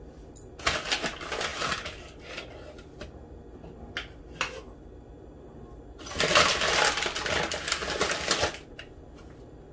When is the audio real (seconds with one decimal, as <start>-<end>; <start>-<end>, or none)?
0.0-9.7